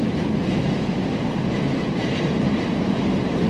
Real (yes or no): yes